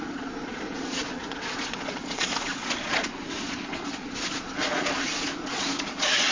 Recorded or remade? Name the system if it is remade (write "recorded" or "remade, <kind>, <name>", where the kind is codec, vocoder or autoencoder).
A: remade, vocoder, Vocos